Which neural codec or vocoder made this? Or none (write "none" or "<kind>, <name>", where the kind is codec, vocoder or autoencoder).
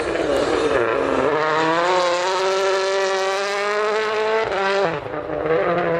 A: none